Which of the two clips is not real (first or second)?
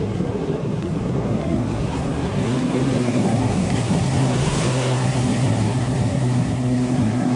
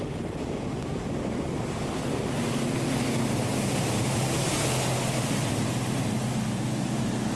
first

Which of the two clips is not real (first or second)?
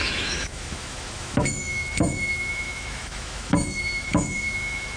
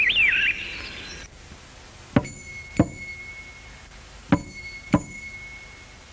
first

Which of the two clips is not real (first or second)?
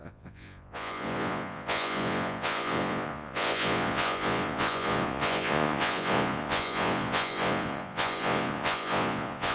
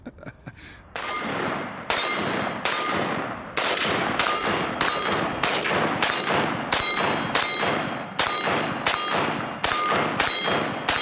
first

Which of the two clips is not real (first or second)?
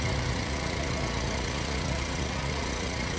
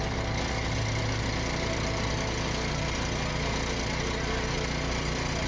first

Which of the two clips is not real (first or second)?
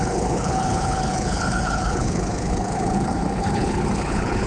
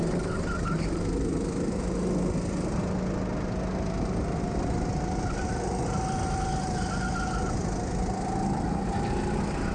first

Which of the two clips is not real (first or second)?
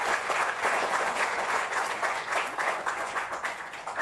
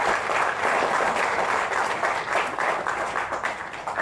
first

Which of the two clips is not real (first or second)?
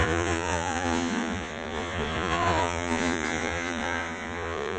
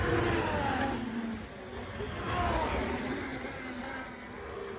first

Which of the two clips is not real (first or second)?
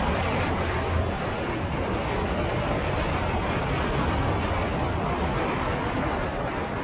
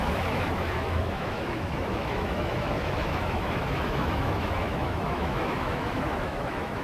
second